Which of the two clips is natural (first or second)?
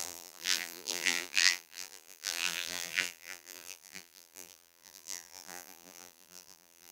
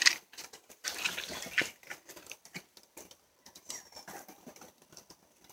second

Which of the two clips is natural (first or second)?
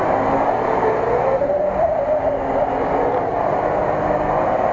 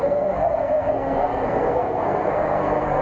first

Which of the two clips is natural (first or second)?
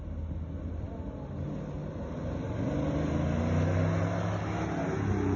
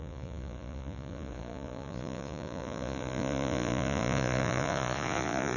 first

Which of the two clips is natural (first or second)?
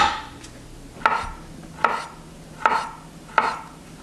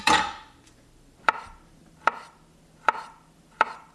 first